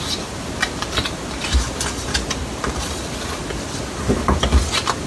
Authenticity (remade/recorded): recorded